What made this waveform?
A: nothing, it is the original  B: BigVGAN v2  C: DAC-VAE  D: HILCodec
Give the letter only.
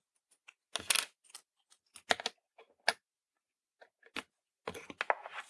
A